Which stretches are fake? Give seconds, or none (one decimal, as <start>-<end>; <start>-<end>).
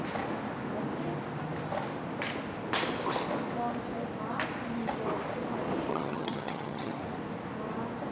5.9-7.0